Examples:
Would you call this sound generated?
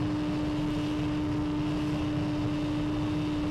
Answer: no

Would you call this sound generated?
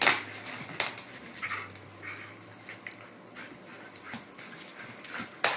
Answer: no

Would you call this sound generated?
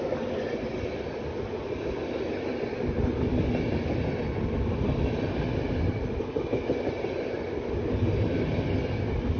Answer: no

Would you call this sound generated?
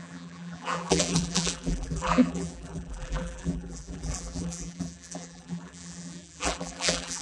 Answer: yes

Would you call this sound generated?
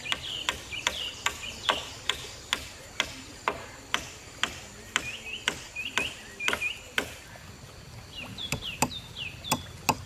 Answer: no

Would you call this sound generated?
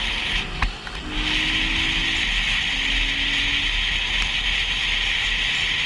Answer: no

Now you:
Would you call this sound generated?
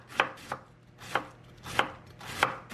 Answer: no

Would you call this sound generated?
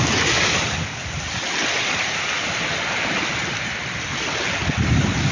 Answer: no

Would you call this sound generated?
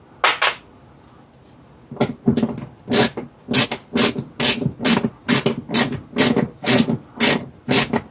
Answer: no